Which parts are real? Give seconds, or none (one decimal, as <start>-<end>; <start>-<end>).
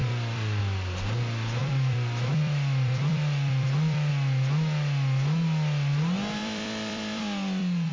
0.6-1.6; 4.1-6.4